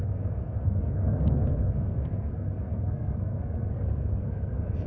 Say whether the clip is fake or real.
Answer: fake